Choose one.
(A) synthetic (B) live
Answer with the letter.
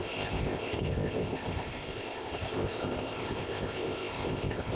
A